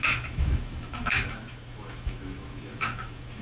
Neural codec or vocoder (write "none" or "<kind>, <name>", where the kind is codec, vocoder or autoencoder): autoencoder, DAC-VAE